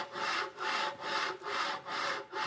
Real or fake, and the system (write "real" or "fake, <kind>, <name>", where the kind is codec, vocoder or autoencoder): real